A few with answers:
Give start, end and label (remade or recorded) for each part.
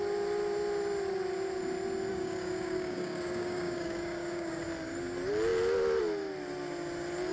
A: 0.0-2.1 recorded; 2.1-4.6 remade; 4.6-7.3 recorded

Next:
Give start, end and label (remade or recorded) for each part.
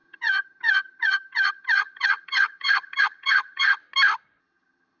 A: 0.0-3.8 remade; 3.8-4.4 recorded; 4.4-5.0 remade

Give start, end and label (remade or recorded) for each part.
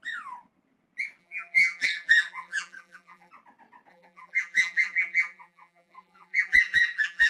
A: 0.0-1.2 recorded; 1.2-3.3 remade; 3.3-3.9 recorded; 3.9-7.3 remade